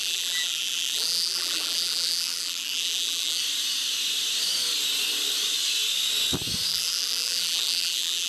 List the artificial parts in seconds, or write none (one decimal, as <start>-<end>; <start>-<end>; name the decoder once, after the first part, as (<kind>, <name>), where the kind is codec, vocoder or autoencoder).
0.0-3.4 (vocoder, BigVGAN v2); 6.7-8.3